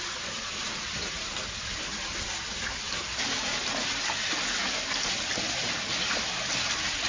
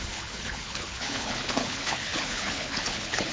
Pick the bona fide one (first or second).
first